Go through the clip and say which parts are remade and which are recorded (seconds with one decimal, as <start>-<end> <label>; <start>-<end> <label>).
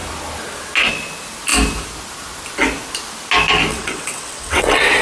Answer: 0.0-3.7 recorded; 3.7-5.0 remade